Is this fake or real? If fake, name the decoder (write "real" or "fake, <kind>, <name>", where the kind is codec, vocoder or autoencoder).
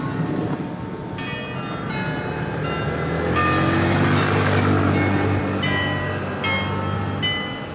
real